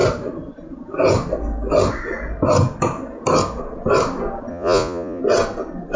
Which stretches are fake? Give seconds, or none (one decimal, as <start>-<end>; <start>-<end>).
4.5-5.2